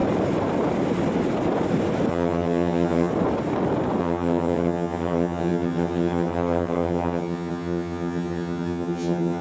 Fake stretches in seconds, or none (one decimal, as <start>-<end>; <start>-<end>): 2.1-3.1; 4.0-9.4